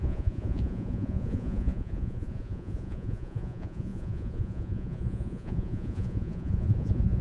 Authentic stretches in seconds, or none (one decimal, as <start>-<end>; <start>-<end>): none